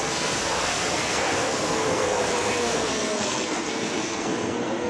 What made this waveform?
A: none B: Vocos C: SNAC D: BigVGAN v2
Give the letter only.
C